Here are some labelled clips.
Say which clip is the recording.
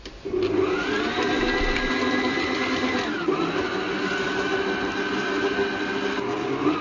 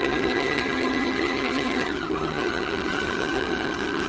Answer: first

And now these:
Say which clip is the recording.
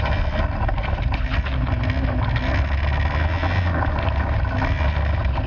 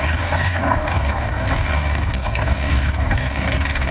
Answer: first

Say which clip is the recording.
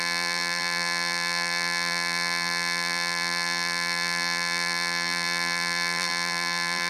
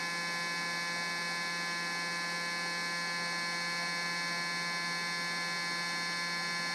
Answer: second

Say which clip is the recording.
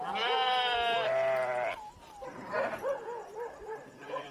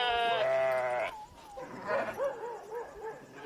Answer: second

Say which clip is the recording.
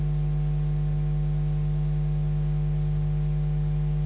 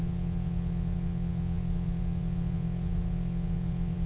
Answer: first